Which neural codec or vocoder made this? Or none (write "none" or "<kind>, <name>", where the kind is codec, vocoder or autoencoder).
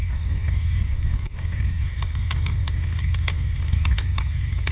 codec, DAC